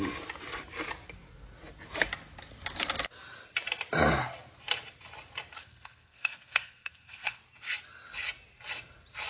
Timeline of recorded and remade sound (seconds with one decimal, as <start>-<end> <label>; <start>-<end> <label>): 0.0-5.6 recorded; 5.6-7.4 remade; 7.4-9.3 recorded